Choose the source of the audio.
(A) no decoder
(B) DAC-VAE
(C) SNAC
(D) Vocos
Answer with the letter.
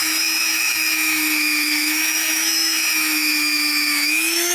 B